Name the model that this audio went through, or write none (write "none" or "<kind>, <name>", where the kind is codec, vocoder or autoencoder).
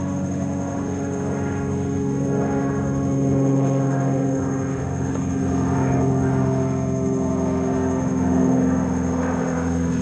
autoencoder, DAC-VAE